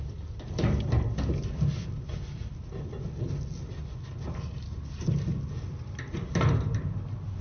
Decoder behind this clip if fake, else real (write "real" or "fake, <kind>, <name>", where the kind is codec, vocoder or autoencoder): real